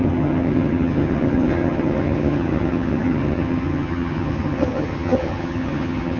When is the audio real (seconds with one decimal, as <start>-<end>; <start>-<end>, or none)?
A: none